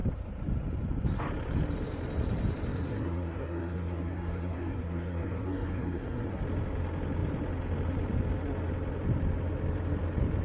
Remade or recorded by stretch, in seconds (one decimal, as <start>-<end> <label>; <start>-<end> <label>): 0.0-2.9 recorded; 2.9-6.4 remade; 6.4-10.4 recorded